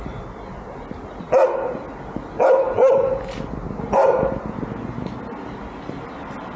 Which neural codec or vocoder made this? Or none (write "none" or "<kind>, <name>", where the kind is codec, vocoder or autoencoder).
none